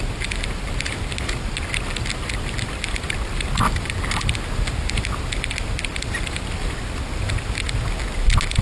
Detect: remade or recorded recorded